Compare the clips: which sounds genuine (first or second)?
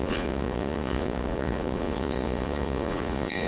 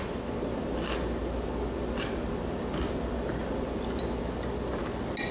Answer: second